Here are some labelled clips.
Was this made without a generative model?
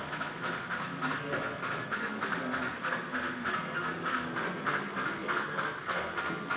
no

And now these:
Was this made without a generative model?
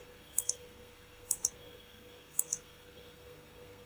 no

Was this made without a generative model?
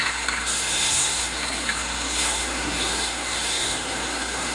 no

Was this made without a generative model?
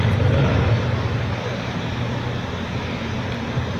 yes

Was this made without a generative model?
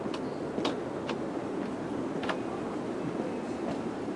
yes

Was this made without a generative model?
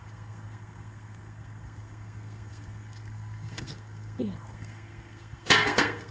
no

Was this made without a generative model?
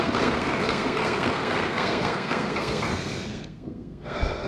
no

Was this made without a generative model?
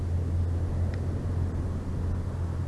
yes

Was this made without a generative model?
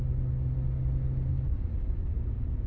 yes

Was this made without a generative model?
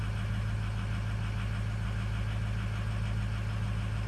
yes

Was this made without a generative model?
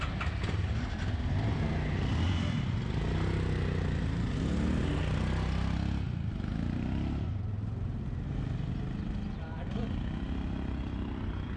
yes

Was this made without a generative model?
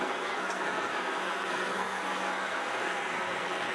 no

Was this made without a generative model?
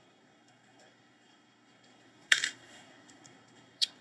no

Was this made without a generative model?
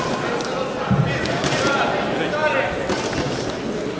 yes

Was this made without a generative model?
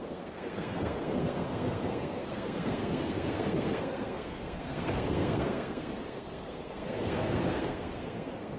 no